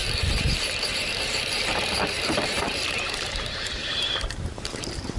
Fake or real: fake